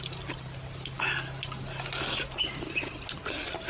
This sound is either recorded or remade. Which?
recorded